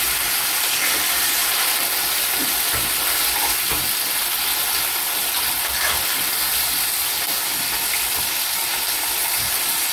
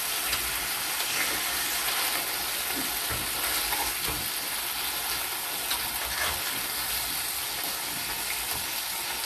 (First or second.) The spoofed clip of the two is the first